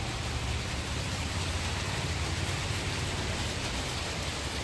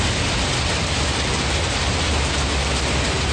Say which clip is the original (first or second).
second